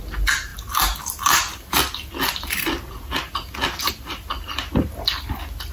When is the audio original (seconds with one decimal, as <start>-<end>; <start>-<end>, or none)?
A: 0.0-5.7